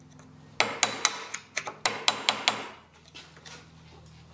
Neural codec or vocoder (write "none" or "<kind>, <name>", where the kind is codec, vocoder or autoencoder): none